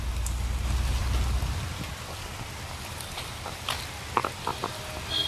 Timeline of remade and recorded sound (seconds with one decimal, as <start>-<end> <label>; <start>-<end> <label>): 0.0-5.3 recorded